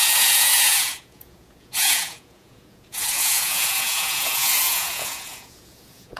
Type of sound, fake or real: fake